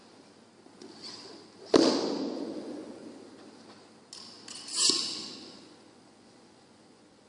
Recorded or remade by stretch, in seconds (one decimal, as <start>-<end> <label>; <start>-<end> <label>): 0.0-2.2 recorded; 2.2-3.0 remade; 3.0-5.1 recorded; 5.1-7.3 remade